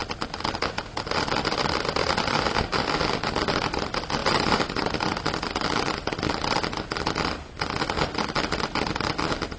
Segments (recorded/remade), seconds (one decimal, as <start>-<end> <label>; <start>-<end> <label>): 0.0-4.2 recorded; 4.2-4.9 remade; 4.9-9.6 recorded